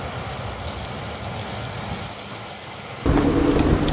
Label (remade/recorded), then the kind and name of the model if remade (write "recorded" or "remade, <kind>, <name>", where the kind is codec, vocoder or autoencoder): recorded